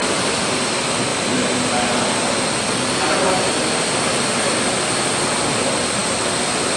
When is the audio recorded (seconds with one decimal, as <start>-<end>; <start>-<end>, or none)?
0.0-6.8

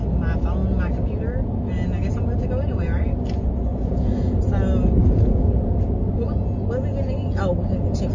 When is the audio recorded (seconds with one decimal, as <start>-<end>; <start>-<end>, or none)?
0.0-3.7; 4.4-5.0; 5.7-8.1

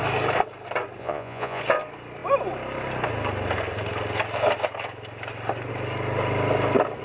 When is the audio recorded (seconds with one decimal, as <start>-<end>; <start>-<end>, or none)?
0.0-1.0; 1.6-7.0

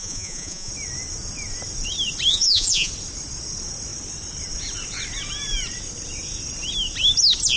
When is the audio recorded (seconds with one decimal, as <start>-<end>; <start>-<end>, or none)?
0.7-2.3; 2.9-7.6

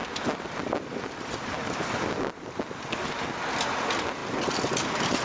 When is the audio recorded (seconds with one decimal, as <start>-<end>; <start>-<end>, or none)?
0.0-5.2

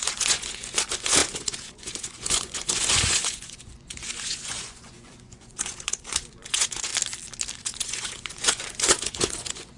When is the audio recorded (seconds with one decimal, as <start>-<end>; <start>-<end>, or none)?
6.9-7.6

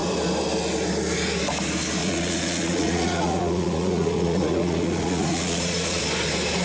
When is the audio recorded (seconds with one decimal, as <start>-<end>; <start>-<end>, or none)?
0.0-2.0; 6.0-6.6

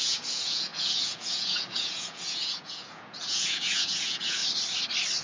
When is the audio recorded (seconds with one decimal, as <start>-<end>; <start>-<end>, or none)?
4.4-5.2